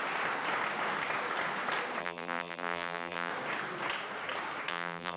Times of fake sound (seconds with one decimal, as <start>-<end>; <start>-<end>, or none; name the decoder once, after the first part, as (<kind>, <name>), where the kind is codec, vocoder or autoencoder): 2.0-3.3 (vocoder, BigVGAN v2); 4.7-5.2